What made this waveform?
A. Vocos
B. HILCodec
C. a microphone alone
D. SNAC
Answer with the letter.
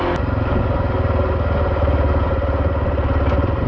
C